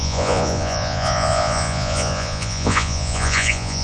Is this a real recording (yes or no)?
no